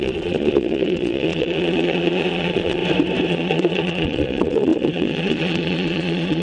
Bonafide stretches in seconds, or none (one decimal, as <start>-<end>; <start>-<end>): 2.8-3.3